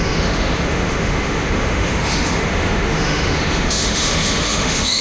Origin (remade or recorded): remade